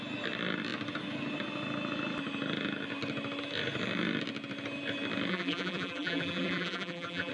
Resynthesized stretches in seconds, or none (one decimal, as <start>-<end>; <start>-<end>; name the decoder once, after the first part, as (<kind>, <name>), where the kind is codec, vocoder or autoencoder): 5.3-7.3 (vocoder, BigVGAN v2)